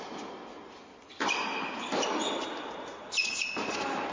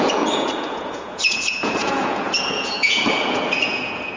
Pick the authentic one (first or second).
first